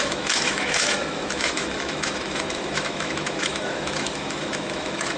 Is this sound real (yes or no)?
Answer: no